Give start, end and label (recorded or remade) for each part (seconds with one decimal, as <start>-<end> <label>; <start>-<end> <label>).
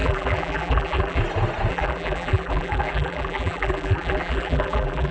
0.0-1.2 remade; 1.2-1.7 recorded; 1.7-5.1 remade